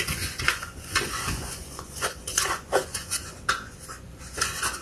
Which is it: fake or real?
fake